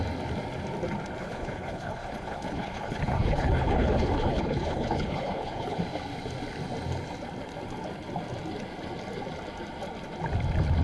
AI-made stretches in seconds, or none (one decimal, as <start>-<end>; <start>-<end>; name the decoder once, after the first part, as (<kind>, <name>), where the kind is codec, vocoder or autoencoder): 1.2-5.8 (codec, HILCodec)